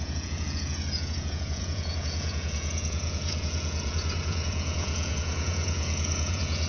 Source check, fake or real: fake